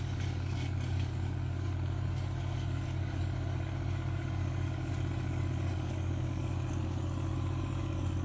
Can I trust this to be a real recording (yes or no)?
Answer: no